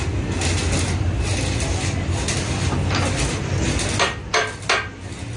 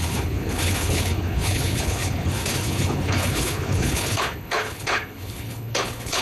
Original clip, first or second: first